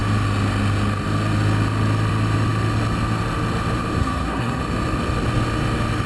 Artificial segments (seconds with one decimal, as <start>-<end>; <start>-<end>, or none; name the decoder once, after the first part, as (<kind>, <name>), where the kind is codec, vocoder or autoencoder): 4.0-4.6 (codec, SNAC)